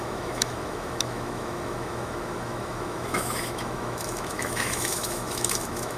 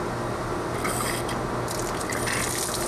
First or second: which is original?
second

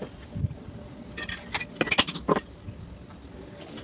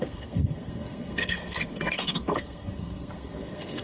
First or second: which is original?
first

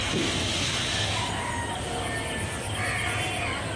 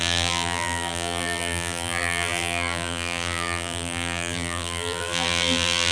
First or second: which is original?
first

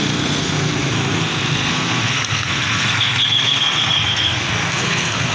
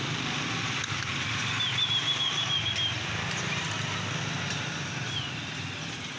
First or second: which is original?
second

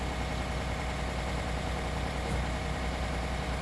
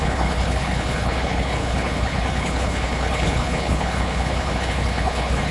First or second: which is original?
first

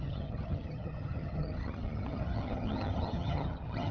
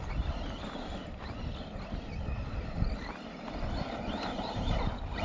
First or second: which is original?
second